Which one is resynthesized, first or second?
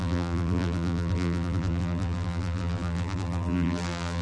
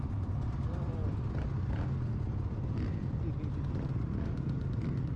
first